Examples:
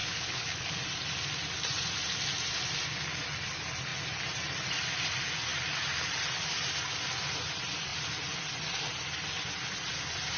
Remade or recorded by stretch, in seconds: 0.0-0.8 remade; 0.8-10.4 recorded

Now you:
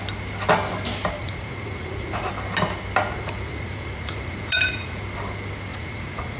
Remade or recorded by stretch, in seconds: 0.0-1.2 recorded; 1.2-2.3 remade; 2.3-3.1 recorded; 3.1-5.0 remade; 5.0-5.7 recorded; 5.7-6.4 remade

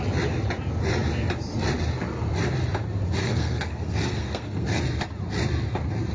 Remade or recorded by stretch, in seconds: 0.0-3.2 recorded; 3.2-4.8 remade; 4.8-6.1 recorded

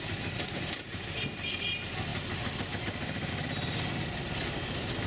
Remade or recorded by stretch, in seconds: 0.0-5.1 recorded

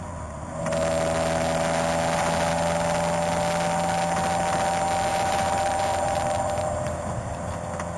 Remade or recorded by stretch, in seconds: 0.0-5.1 recorded; 5.1-7.5 remade; 7.5-8.0 recorded

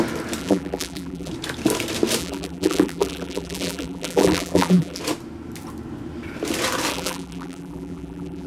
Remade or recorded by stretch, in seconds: 0.0-0.4 recorded; 0.4-1.3 remade; 1.3-2.2 recorded; 2.2-5.0 remade; 5.0-6.9 recorded; 6.9-8.5 remade